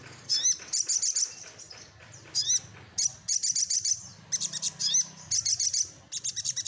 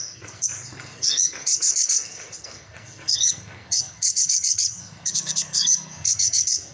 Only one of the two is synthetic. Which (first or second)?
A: second